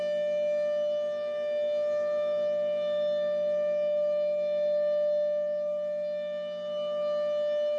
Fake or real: real